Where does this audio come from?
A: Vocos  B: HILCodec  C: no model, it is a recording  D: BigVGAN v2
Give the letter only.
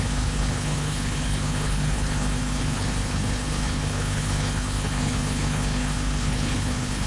B